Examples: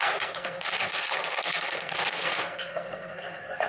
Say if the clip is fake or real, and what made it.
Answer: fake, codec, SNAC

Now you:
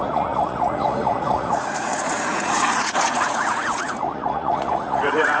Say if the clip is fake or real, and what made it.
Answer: fake, vocoder, Vocos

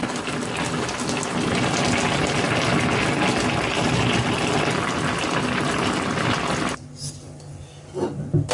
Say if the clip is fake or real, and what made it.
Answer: real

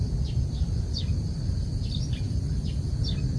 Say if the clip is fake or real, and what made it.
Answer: real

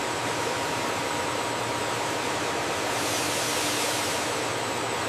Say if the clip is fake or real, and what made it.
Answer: real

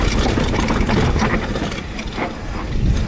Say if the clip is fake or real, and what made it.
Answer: real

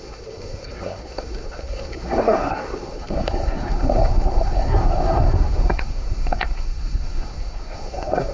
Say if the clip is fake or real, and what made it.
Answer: fake, codec, SNAC